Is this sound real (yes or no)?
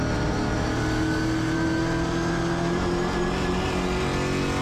yes